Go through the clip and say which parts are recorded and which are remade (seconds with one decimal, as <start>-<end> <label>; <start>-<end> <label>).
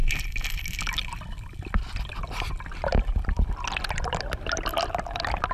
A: 0.0-5.5 recorded